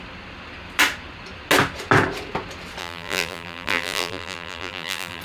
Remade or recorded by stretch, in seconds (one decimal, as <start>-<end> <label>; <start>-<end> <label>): 0.0-2.8 recorded; 2.8-5.2 remade